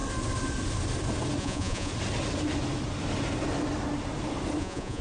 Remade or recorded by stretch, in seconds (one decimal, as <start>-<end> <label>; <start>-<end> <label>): 0.0-1.4 recorded; 1.4-1.9 remade; 1.9-4.6 recorded; 4.6-5.0 remade